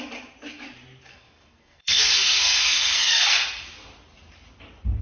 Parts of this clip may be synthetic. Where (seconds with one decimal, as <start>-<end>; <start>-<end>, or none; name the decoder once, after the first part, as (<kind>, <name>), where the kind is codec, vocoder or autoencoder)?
1.1-3.6 (codec, SNAC)

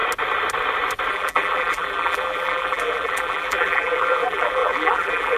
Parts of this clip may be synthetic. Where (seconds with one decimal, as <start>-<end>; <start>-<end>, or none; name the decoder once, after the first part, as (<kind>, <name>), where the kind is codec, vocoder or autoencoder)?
1.1-5.4 (vocoder, BigVGAN v2)

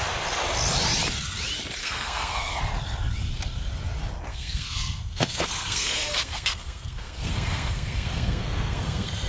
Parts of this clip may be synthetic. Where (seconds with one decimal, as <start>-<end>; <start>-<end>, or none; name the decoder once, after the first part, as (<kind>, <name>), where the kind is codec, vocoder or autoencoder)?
1.8-2.6 (codec, SNAC); 4.3-9.3

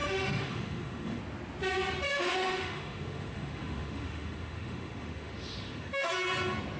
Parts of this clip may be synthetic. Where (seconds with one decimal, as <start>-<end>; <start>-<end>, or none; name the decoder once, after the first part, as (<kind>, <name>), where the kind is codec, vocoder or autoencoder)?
0.0-1.2 (autoencoder, DAC-VAE); 2.1-6.1